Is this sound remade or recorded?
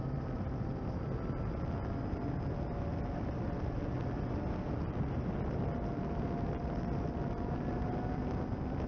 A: recorded